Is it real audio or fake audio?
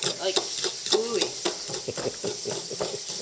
real